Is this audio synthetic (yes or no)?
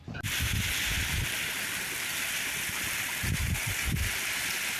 no